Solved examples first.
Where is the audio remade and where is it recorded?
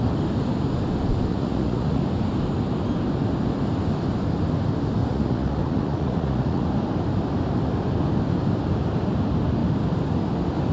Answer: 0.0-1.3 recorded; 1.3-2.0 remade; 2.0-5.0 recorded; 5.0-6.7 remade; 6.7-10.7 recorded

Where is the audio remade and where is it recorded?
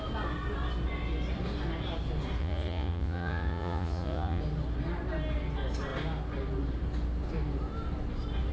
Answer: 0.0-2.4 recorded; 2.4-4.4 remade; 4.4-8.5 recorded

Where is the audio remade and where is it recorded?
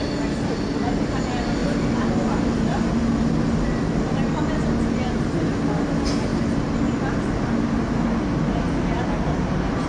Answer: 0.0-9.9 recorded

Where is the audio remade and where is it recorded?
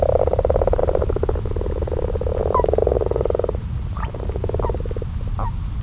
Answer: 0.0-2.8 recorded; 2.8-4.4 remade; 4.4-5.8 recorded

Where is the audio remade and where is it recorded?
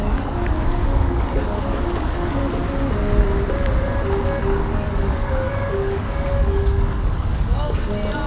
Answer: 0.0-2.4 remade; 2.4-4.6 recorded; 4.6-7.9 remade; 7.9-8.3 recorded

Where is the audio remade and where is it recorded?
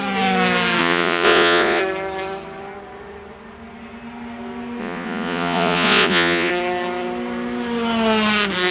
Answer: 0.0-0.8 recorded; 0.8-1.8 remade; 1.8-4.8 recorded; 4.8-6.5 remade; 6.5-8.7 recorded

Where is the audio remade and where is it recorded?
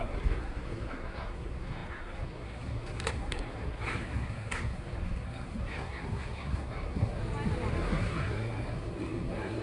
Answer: 0.0-7.2 remade; 7.2-7.7 recorded; 7.7-9.6 remade